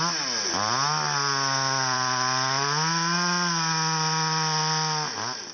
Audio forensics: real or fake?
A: real